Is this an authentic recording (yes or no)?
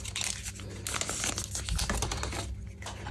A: yes